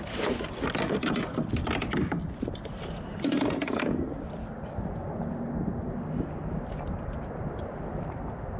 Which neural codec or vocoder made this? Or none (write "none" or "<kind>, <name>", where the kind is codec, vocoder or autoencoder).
none